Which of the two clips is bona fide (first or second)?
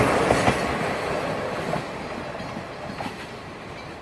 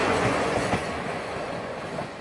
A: first